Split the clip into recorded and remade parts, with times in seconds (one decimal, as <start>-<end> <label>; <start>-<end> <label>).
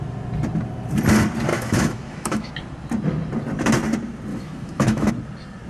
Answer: 0.0-1.5 recorded; 1.5-2.5 remade; 2.5-4.3 recorded; 4.3-5.1 remade; 5.1-5.7 recorded